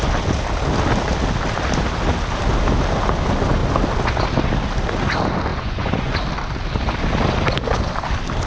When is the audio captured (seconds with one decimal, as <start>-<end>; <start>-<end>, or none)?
0.0-5.5; 6.1-8.5